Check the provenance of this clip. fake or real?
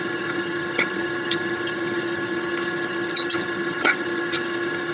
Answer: fake